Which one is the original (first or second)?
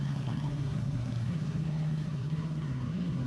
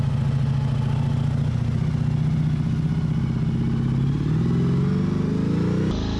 second